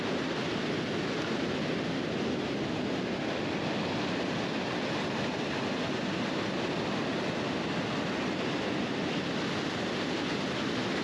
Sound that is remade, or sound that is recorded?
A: recorded